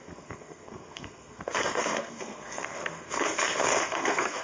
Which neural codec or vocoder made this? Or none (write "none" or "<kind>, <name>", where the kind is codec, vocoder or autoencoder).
codec, SNAC